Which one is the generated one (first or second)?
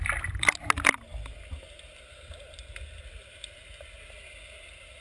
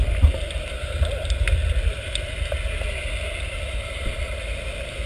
second